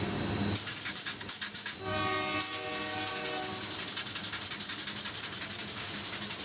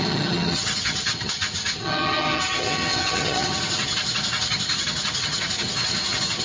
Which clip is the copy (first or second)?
second